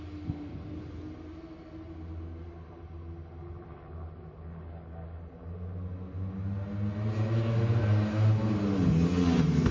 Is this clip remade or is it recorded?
recorded